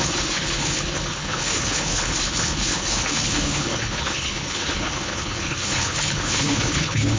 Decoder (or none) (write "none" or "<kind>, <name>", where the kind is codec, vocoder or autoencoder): codec, HILCodec